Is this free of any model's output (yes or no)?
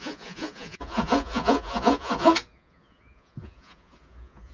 no